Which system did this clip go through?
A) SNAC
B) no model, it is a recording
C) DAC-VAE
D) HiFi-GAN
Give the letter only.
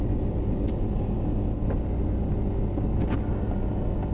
B